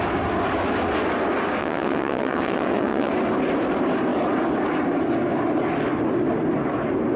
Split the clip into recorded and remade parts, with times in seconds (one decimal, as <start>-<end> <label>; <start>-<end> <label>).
0.0-1.6 recorded; 1.6-3.1 remade; 3.1-7.2 recorded